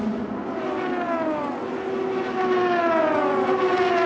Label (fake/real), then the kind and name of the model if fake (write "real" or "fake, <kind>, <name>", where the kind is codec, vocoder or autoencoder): real